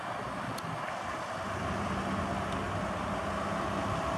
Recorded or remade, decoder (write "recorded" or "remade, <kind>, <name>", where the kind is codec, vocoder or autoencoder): recorded